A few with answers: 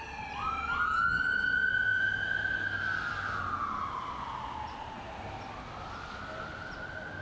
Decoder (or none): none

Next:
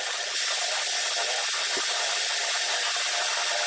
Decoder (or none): none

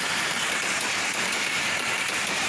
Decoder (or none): vocoder, BigVGAN v2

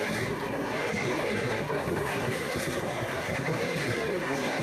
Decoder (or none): codec, SNAC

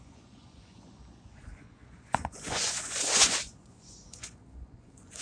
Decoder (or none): vocoder, Vocos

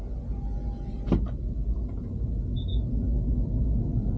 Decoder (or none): none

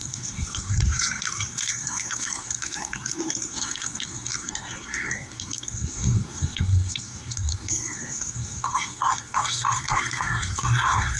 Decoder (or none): codec, SNAC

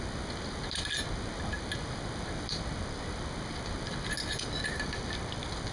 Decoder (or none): none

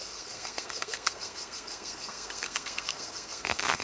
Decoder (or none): codec, SNAC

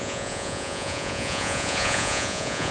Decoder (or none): vocoder, Vocos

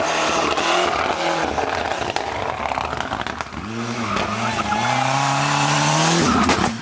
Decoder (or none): none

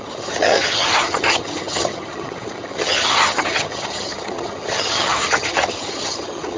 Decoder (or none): vocoder, HiFi-GAN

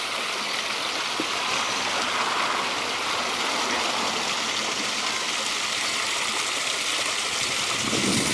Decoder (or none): none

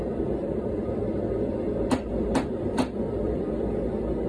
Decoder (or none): vocoder, BigVGAN v2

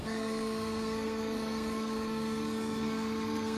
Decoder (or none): codec, SNAC